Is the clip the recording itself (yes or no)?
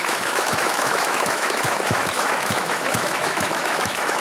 no